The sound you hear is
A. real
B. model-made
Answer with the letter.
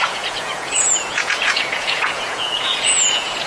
B